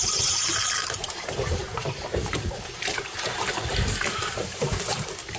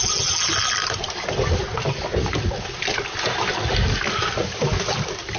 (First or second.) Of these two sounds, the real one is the second